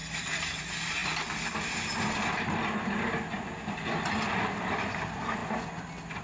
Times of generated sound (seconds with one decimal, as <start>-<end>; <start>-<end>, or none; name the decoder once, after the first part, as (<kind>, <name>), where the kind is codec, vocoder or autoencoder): none